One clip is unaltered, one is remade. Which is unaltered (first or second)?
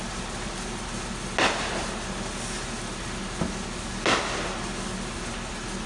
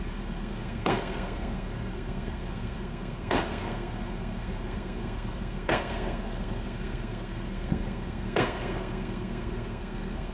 first